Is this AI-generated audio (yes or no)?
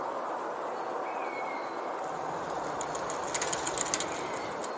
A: no